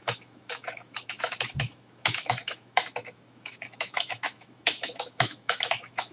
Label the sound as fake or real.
fake